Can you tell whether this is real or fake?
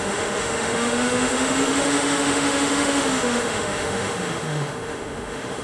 fake